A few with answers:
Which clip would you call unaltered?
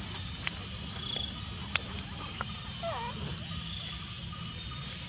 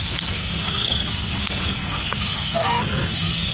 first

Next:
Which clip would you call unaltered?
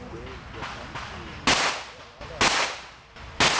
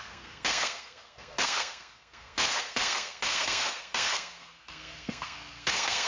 first